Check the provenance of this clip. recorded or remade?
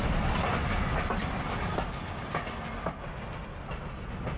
recorded